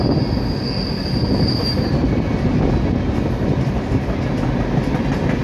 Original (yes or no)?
yes